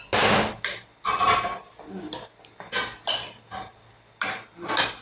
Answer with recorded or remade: recorded